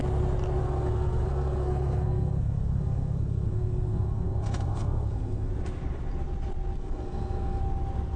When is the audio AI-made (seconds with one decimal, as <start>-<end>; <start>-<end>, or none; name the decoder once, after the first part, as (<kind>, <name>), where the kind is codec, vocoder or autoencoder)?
0.6-5.5 (codec, SNAC); 6.8-7.6